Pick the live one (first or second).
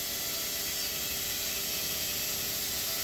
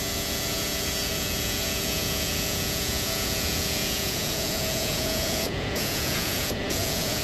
first